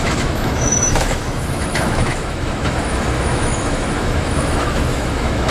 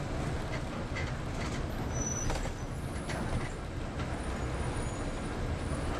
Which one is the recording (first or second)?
second